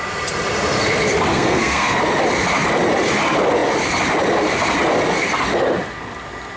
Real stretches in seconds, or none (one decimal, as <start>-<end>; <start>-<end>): 0.0-1.3; 2.0-6.6

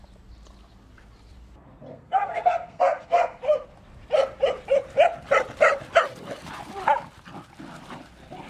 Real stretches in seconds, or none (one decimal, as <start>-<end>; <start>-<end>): 0.0-1.9; 3.4-8.5

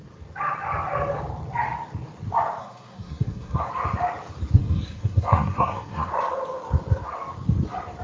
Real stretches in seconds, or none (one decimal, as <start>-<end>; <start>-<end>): 0.0-2.6; 3.7-4.6; 6.1-8.0

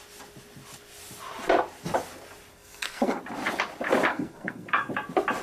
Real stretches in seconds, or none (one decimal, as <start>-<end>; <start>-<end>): 0.0-2.5; 3.2-4.1; 4.9-5.4

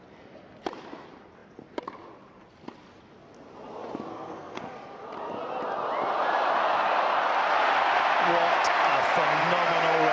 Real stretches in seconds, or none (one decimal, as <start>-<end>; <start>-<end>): 0.0-4.1; 4.6-10.1

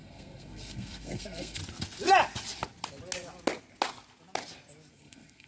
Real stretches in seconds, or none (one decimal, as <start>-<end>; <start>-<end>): 1.6-4.9

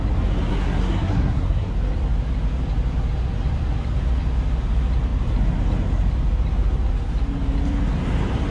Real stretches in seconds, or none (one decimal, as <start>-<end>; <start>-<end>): 0.0-0.5; 1.7-8.5